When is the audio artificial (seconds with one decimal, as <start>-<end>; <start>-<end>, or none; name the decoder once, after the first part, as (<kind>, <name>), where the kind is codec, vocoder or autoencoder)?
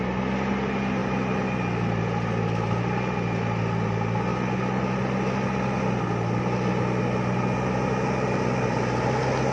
none